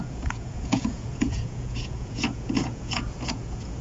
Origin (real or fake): fake